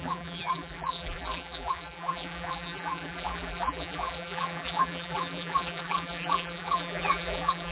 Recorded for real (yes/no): no